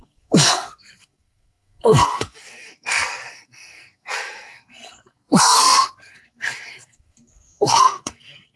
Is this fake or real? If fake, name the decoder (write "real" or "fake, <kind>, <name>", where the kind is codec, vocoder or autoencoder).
fake, codec, SNAC